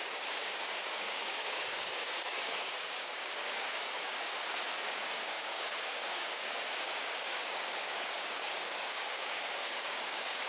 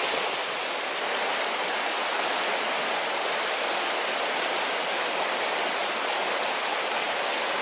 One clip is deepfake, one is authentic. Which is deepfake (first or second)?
first